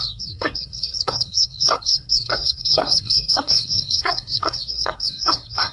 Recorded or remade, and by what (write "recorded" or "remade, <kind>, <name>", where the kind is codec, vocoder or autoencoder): remade, codec, SNAC